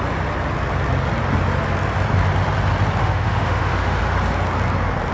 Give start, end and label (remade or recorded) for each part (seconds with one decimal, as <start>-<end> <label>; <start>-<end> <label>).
0.0-3.0 recorded; 3.0-4.0 remade; 4.0-5.1 recorded

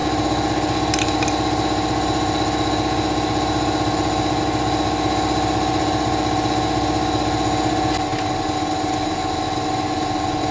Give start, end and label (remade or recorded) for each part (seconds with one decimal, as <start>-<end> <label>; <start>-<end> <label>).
0.0-10.5 recorded

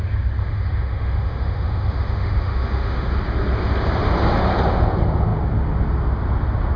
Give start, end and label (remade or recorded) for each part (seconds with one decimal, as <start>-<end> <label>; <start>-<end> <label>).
0.0-0.4 recorded; 0.4-3.1 remade; 3.1-6.8 recorded

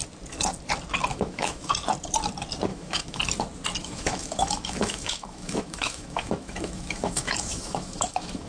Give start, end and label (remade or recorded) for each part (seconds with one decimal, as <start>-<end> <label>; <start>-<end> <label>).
0.0-1.1 recorded; 1.1-1.7 remade; 1.7-2.7 recorded; 2.7-3.2 remade; 3.2-3.8 recorded; 3.8-8.5 remade

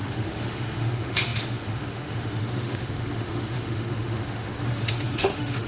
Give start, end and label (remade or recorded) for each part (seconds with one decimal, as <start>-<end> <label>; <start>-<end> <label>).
0.0-5.7 remade

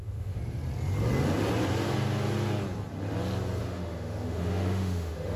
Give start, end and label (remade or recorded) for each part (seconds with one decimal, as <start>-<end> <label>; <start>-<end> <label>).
0.0-0.4 remade; 0.4-3.6 recorded; 3.6-5.4 remade

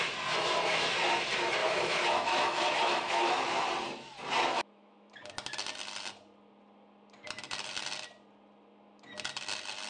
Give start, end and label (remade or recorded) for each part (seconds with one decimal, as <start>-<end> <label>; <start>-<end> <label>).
0.0-1.6 recorded; 1.6-3.7 remade; 3.7-4.5 recorded; 4.5-5.1 remade; 5.1-9.9 recorded